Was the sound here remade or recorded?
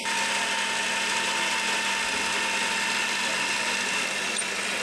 recorded